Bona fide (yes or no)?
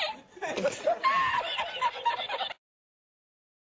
yes